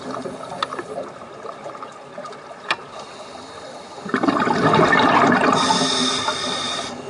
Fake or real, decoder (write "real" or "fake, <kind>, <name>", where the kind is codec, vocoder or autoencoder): real